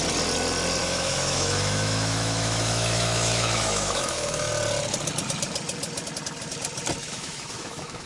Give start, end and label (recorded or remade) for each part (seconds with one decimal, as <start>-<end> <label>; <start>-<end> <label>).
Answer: 0.0-0.8 recorded; 0.8-4.5 remade; 4.5-7.0 recorded; 7.0-8.1 remade